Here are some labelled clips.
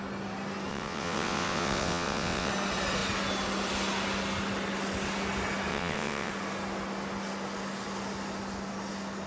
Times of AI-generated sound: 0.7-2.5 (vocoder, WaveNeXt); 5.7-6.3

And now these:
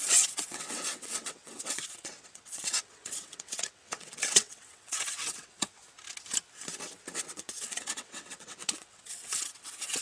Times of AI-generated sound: 0.0-5.8 (vocoder, WaveNeXt); 7.2-10.0

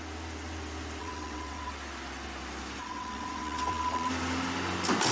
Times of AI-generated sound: 1.0-1.7 (vocoder, WaveNeXt); 2.8-4.1

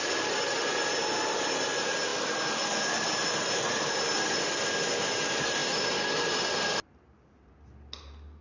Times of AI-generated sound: none

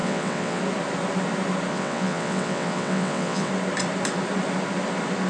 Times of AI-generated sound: 0.0-0.6 (vocoder, WaveNeXt); 1.7-3.5